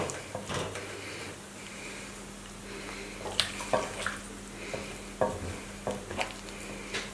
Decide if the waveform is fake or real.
real